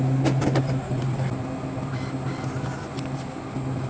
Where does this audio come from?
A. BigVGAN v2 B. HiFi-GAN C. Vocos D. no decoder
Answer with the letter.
D